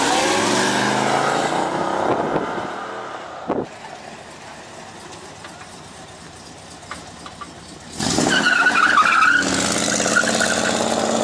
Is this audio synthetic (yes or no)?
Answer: no